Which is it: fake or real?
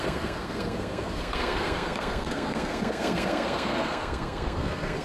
fake